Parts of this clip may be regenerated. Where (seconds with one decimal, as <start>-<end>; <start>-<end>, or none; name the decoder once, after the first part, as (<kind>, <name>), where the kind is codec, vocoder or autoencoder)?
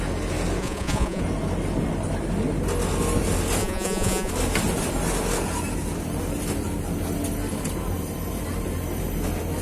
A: 0.6-1.2 (vocoder, Vocos); 3.6-4.3